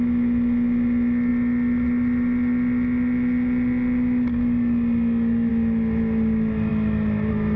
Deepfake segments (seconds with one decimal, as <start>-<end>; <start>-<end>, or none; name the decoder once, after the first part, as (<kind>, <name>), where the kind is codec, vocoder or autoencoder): none